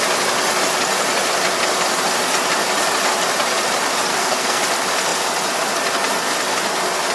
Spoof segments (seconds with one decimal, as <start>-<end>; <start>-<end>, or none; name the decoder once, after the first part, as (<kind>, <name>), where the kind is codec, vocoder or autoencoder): 4.1-4.6 (codec, SNAC)